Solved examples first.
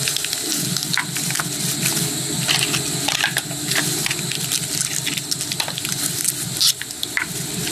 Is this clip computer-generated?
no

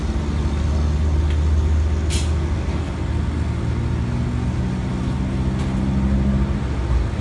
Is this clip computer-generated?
no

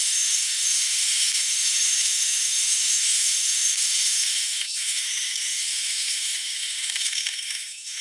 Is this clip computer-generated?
yes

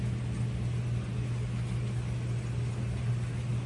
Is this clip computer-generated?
no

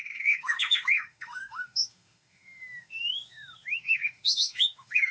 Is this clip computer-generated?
yes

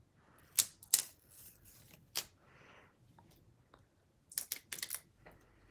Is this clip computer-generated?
no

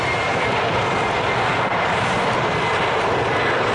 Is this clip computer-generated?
no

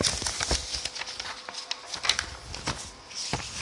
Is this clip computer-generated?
no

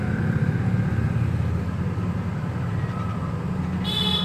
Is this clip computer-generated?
no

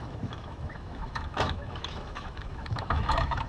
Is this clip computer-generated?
yes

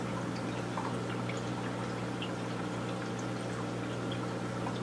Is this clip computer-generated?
no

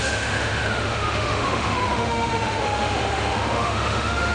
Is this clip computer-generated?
yes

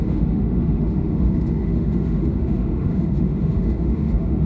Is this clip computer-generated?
yes